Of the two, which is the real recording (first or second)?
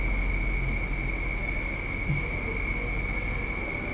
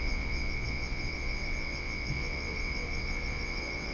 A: first